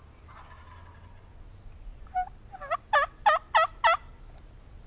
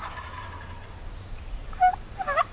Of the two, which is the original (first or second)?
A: first